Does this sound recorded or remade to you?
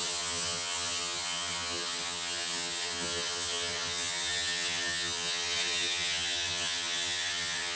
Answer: remade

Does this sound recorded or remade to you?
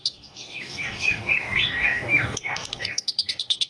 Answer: remade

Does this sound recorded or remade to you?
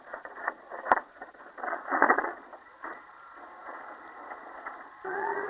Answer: remade